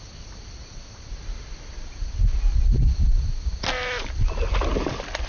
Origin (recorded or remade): recorded